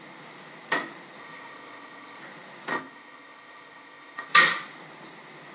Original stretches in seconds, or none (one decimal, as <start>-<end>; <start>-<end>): 0.0-1.2; 2.2-2.7; 4.3-5.5